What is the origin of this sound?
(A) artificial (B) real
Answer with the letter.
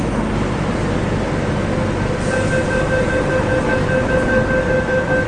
B